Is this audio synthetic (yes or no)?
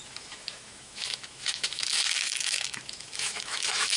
yes